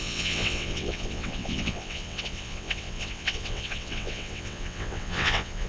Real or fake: fake